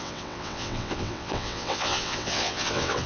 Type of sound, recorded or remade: remade